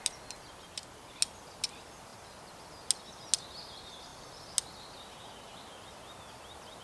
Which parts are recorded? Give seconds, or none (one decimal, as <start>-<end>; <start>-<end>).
0.0-6.8